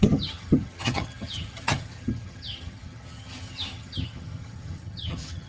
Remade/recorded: remade